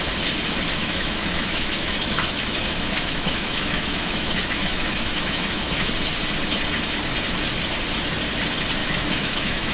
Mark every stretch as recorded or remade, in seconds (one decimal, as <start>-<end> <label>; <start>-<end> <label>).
0.0-0.8 recorded; 0.8-5.9 remade; 5.9-8.8 recorded; 8.8-9.7 remade